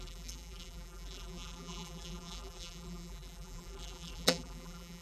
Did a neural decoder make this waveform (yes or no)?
yes